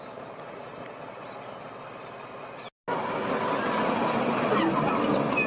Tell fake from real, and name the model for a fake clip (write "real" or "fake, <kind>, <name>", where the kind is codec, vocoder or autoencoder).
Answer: real